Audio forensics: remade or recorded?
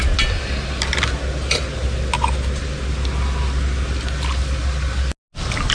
recorded